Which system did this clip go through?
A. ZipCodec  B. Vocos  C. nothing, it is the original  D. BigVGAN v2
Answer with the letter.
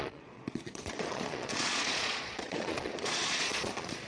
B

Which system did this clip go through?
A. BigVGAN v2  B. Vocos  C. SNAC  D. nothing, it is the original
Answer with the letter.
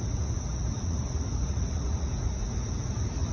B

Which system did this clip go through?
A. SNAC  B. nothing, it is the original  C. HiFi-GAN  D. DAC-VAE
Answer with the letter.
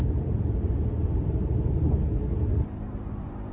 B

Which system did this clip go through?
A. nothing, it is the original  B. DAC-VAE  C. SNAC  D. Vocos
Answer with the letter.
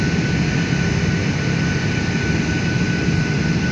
A